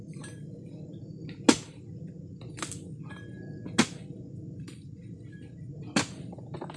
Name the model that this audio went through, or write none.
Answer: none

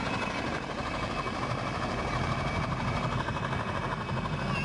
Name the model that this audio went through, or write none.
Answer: none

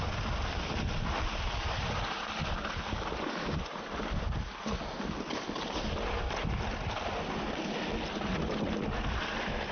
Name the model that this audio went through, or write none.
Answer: none